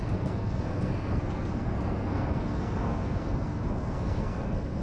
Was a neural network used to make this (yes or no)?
yes